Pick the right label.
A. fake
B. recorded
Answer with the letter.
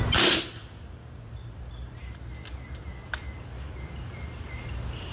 B